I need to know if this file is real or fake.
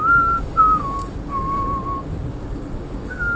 fake